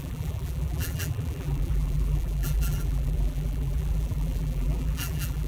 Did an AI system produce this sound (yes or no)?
yes